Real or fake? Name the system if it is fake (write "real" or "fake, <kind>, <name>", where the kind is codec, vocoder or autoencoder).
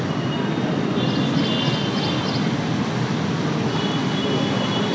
real